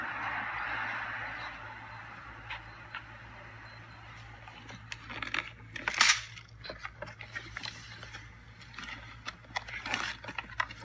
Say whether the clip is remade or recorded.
recorded